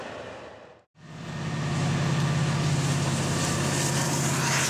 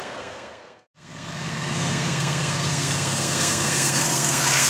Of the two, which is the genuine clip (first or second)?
first